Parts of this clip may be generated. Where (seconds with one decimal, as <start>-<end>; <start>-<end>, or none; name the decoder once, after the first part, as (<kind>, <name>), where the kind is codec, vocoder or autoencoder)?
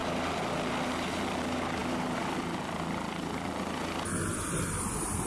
none